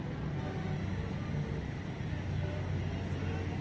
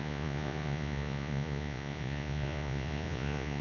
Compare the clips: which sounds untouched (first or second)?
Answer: first